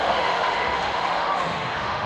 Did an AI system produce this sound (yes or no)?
yes